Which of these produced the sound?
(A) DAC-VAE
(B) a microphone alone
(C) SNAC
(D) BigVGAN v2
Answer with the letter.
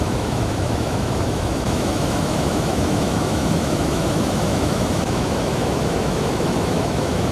A